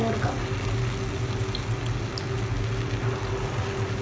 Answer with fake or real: real